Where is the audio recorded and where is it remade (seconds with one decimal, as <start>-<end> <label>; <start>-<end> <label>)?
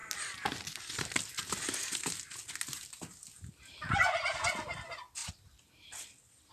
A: 0.0-6.5 recorded